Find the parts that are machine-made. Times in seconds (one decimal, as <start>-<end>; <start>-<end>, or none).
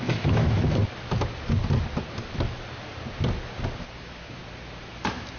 0.0-0.8; 4.0-4.4; 4.9-5.4